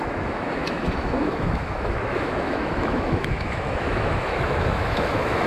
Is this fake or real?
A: fake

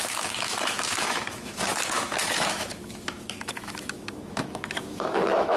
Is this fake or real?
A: fake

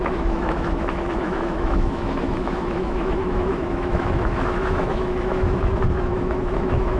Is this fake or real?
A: fake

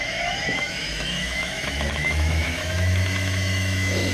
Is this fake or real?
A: fake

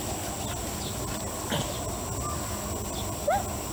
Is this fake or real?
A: real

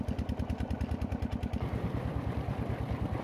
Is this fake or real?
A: real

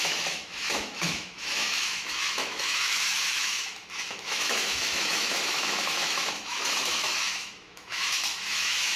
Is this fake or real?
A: fake